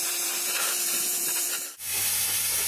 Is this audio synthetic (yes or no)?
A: yes